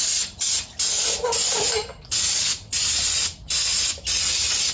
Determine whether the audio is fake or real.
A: real